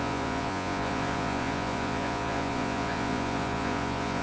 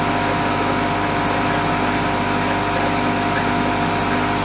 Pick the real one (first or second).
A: second